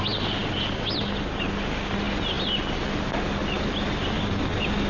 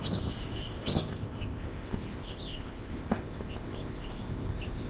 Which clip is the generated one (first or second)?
second